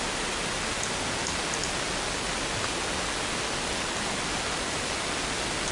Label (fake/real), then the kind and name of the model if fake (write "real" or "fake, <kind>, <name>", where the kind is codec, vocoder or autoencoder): real